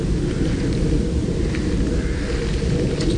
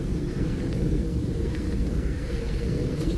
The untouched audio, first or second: first